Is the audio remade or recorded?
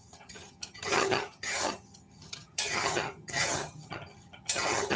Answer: remade